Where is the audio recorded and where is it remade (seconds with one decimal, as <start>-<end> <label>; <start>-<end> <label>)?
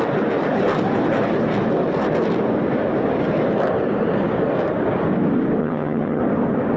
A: 0.0-5.6 recorded; 5.6-6.2 remade; 6.2-6.8 recorded